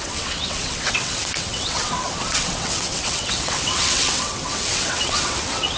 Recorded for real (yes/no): no